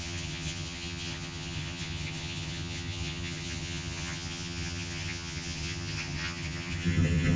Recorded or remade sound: remade